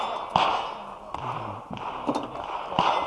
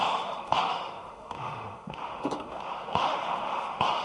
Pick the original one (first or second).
first